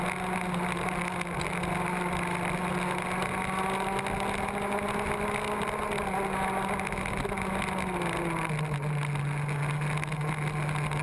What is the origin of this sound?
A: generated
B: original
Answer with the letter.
B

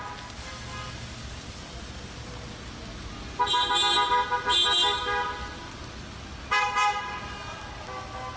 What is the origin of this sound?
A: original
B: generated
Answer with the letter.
A